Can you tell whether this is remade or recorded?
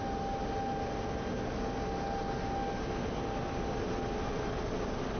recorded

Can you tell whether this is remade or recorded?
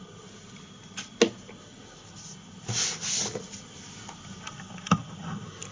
recorded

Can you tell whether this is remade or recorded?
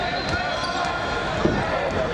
recorded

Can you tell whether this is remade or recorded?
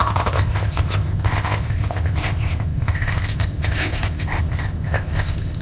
remade